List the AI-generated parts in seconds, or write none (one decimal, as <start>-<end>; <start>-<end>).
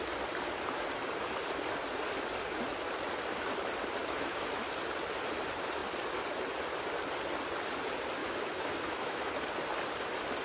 4.0-4.5; 8.2-9.3